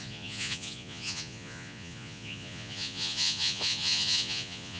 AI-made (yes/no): yes